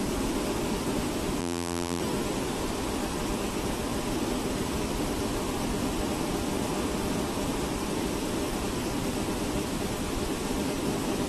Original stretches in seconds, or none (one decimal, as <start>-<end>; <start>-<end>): 0.0-1.4; 2.0-11.3